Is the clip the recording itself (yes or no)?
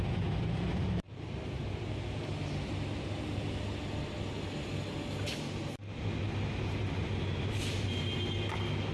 yes